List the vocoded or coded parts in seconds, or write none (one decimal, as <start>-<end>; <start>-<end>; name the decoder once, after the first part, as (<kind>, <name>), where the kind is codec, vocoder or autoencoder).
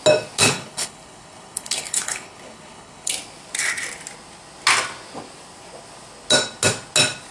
0.4-3.1 (codec, HILCodec)